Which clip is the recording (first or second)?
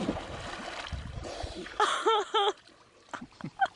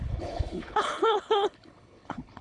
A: first